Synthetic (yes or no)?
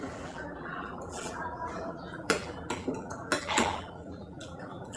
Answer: yes